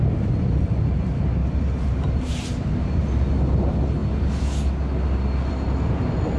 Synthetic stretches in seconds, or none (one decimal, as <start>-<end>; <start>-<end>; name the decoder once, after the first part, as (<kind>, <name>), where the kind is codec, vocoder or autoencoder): none